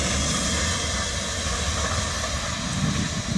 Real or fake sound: real